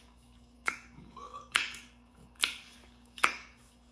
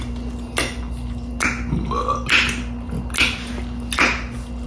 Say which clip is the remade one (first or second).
first